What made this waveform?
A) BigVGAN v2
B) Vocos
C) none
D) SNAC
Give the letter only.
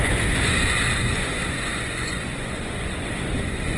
B